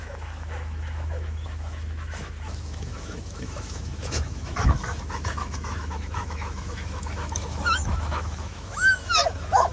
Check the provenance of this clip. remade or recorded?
remade